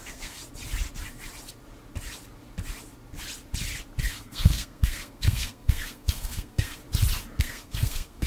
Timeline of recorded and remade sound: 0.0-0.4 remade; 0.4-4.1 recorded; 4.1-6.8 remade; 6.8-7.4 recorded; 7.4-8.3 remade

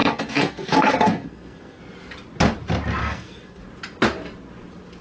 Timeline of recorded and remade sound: 0.0-1.8 remade; 1.8-3.0 recorded; 3.0-3.6 remade; 3.6-5.0 recorded

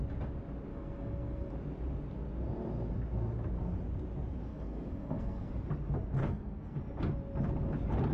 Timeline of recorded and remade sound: 0.0-0.7 recorded; 0.7-1.5 remade; 1.5-4.5 recorded; 4.5-5.5 remade; 5.5-6.2 recorded; 6.2-6.8 remade; 6.8-8.1 recorded

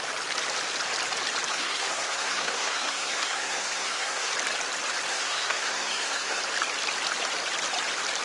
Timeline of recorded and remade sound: 0.0-1.5 recorded; 1.5-4.3 remade; 4.3-5.1 recorded; 5.1-6.4 remade; 6.4-8.2 recorded

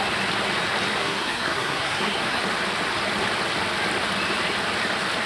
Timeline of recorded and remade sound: 0.0-1.0 recorded; 1.0-2.4 remade; 2.4-5.3 recorded

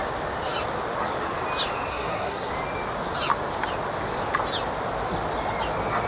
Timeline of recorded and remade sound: 0.0-1.9 recorded; 1.9-2.5 remade; 2.5-6.1 recorded